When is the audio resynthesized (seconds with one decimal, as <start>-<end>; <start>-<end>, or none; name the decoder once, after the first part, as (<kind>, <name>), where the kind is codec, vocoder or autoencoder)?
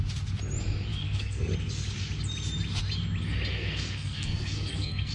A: 0.9-1.5 (codec, SNAC); 3.5-5.1